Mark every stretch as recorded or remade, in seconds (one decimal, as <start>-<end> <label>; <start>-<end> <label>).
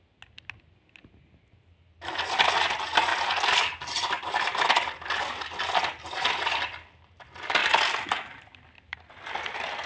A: 0.0-3.1 recorded; 3.1-4.9 remade; 4.9-7.6 recorded; 7.6-9.2 remade; 9.2-9.9 recorded